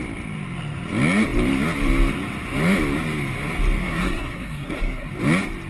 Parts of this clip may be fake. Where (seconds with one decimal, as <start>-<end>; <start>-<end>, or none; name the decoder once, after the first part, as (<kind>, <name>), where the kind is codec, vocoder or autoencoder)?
3.8-5.1 (codec, SNAC)